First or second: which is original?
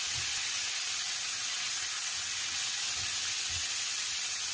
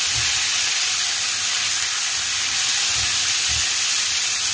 second